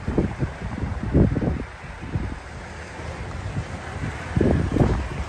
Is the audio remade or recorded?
recorded